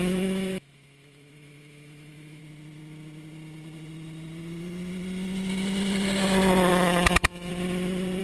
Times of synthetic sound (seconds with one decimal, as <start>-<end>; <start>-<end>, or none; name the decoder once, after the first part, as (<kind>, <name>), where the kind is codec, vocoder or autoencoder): 0.0-2.4 (autoencoder, DAC-VAE); 6.7-7.5